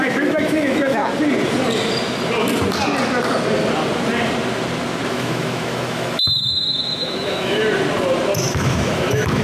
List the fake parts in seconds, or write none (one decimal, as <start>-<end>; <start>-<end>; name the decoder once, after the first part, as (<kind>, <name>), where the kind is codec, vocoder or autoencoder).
0.0-1.0 (autoencoder, DAC-VAE); 5.1-7.6; 8.5-9.4